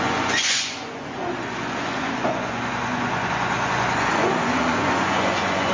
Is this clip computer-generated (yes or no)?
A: yes